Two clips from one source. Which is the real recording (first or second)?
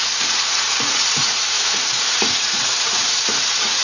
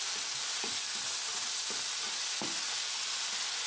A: second